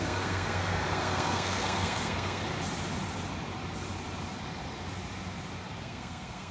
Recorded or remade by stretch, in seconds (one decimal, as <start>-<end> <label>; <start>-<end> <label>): 0.0-2.4 remade; 2.4-5.8 recorded; 5.8-6.5 remade